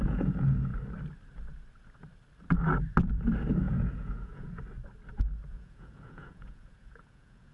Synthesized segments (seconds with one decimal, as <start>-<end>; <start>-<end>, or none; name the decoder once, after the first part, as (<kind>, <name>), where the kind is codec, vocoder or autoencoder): 0.0-0.7 (vocoder, Vocos); 3.6-4.6; 5.5-7.5